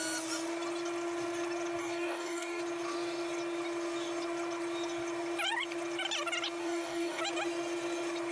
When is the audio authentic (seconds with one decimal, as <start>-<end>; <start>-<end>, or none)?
0.0-1.8; 2.6-6.6; 7.2-8.3